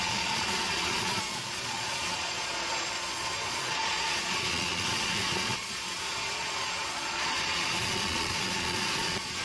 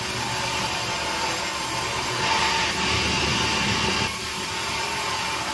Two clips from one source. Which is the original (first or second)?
second